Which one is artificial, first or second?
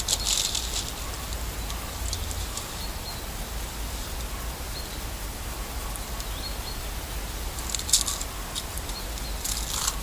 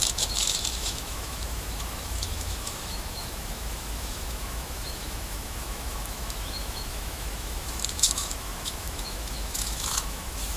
second